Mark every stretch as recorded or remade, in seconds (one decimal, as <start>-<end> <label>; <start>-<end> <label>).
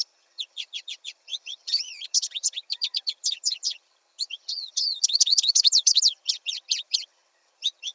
0.0-7.9 remade